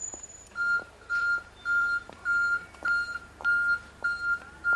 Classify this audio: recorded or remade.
remade